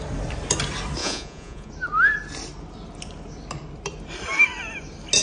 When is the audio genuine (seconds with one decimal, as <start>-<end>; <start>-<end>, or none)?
0.0-1.0; 1.7-5.2